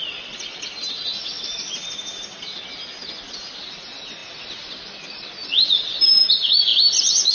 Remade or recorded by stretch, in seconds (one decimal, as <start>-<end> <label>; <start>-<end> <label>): 0.0-7.3 recorded